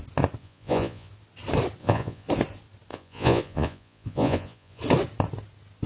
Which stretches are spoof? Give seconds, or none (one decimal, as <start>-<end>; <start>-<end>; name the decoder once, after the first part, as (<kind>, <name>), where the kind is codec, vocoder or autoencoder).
0.4-1.1 (vocoder, Vocos); 1.8-2.3; 2.9-4.8